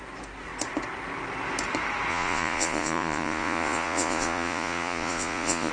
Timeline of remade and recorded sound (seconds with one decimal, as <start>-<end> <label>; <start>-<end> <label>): 0.0-2.1 recorded; 2.1-5.7 remade